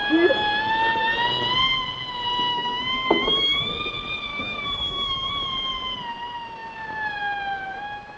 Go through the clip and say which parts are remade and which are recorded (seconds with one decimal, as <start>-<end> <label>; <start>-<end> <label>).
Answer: 0.0-2.5 recorded; 2.5-3.7 remade; 3.7-4.3 recorded; 4.3-5.3 remade; 5.3-8.2 recorded